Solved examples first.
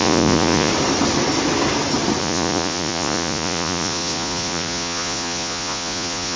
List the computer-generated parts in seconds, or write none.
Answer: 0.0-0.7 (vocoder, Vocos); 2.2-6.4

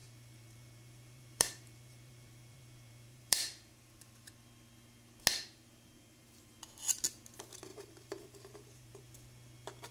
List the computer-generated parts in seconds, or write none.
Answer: 0.0-4.3 (vocoder, BigVGAN v2); 5.3-6.5; 7.7-9.0

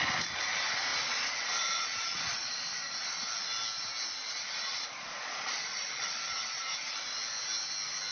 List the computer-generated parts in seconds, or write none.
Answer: 0.9-3.2 (vocoder, Vocos); 4.4-6.6

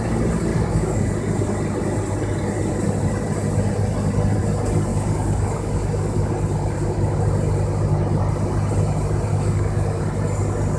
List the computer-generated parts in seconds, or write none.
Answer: 0.5-1.1 (codec, DAC); 4.9-6.3; 9.3-10.0